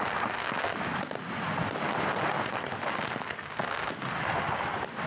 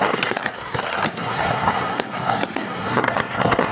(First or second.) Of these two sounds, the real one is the first